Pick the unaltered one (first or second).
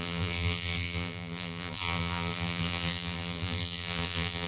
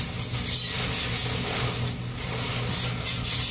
second